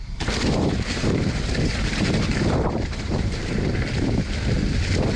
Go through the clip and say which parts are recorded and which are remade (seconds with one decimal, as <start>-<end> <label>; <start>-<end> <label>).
0.0-0.6 recorded; 0.6-3.7 remade; 3.7-5.2 recorded